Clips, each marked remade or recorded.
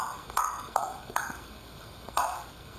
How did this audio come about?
remade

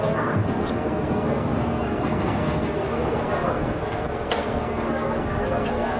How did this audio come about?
remade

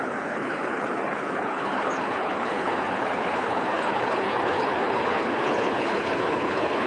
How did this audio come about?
remade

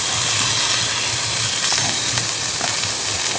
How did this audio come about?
recorded